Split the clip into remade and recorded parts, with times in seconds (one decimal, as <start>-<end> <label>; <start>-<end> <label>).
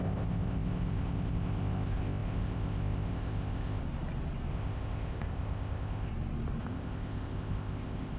0.0-3.8 remade; 3.8-4.5 recorded; 4.5-6.1 remade; 6.1-6.6 recorded; 6.6-8.2 remade